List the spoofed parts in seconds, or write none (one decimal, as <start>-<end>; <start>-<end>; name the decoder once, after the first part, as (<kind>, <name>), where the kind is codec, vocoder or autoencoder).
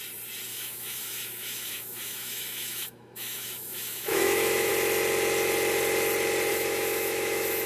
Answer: 0.5-4.7 (autoencoder, DAC-VAE); 6.5-7.7